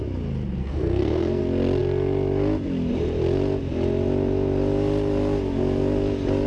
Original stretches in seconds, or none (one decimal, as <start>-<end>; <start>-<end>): 0.0-0.6; 1.4-6.5